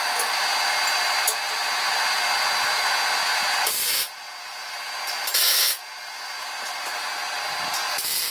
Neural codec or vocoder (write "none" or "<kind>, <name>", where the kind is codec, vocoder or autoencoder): none